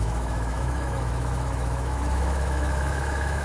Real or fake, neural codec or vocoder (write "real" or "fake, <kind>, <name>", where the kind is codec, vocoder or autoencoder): fake, autoencoder, DAC-VAE